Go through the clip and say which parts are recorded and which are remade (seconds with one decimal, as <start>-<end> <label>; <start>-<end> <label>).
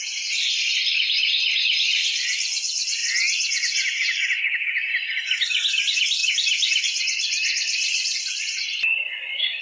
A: 0.0-3.0 remade; 3.0-4.9 recorded; 4.9-9.6 remade